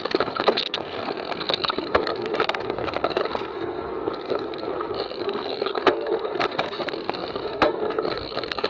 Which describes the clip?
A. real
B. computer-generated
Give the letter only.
B